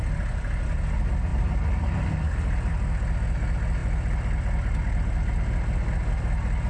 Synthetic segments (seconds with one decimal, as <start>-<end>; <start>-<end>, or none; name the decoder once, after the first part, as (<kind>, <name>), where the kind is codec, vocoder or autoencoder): none